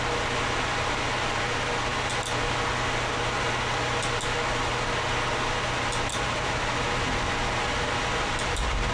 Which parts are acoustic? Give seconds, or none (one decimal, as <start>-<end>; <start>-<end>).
0.0-8.9